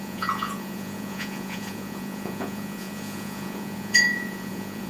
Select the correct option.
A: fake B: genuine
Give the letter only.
A